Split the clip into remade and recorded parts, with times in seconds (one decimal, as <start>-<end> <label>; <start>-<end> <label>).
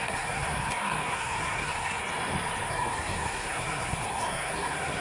0.0-2.0 remade; 2.0-2.7 recorded; 2.7-5.0 remade